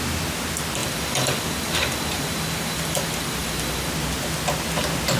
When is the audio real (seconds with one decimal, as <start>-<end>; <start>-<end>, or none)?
0.0-0.8; 3.9-5.2